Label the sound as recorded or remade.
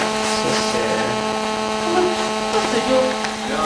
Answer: recorded